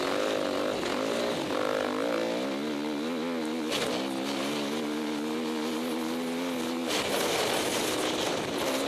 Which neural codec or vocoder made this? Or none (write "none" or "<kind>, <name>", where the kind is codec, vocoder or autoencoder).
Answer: none